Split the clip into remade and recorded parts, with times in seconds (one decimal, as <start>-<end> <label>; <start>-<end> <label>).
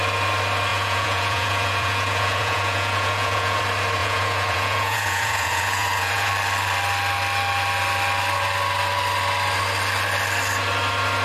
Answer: 0.0-0.7 recorded; 0.7-3.6 remade; 3.6-4.0 recorded; 4.0-6.3 remade; 6.3-11.2 recorded